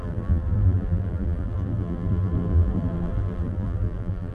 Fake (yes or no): yes